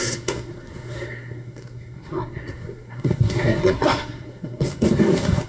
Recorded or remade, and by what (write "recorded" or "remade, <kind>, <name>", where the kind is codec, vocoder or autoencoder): remade, codec, SNAC